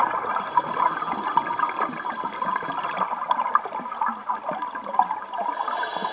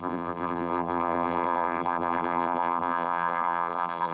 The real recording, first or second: first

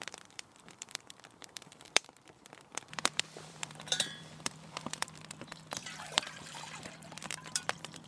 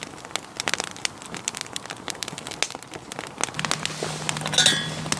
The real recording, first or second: second